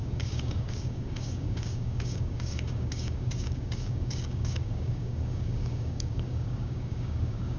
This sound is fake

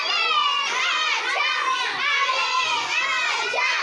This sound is fake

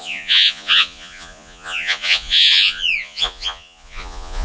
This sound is fake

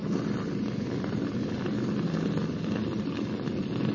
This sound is real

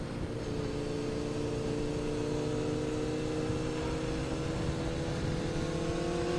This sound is real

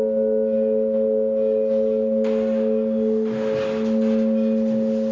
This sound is real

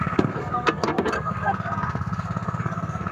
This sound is fake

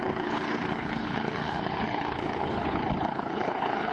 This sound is fake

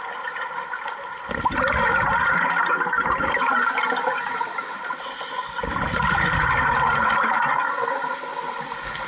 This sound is real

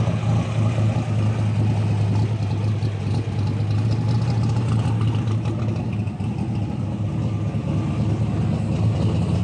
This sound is real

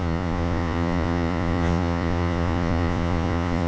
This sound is fake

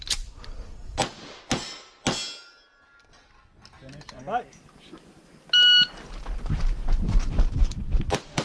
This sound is real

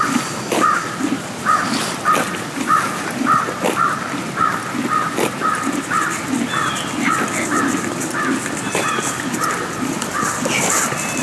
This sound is real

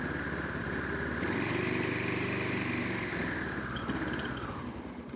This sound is real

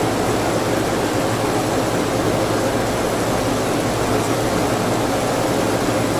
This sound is real